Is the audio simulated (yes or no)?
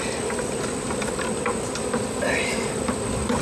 no